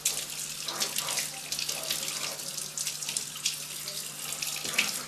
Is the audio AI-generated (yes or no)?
no